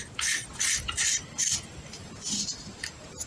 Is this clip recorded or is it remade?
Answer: recorded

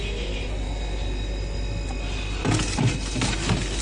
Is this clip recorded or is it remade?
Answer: recorded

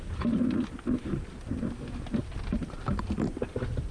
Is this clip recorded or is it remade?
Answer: recorded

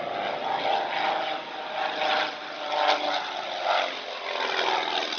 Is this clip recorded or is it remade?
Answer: recorded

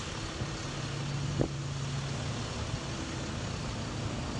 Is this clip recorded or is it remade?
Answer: recorded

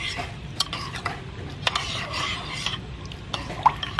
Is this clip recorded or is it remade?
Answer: recorded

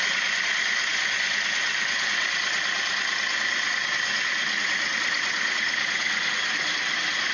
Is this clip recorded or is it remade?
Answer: recorded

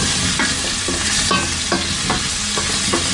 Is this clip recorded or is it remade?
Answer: recorded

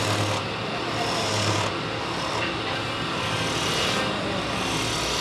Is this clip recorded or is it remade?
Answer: recorded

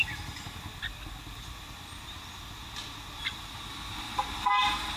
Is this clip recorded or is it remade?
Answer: recorded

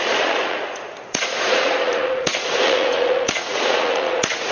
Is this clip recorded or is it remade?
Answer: remade